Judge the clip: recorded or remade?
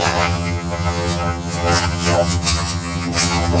remade